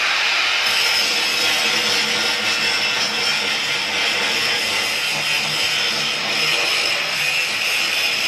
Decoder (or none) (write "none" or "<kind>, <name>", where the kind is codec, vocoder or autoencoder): none